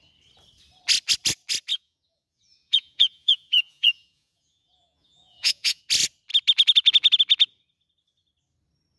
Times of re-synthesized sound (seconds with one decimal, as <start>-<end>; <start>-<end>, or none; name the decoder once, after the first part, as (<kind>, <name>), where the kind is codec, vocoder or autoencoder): 1.7-5.8 (vocoder, Vocos)